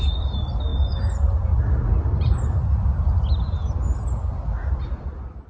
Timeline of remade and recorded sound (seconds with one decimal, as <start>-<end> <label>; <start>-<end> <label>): 0.0-5.5 recorded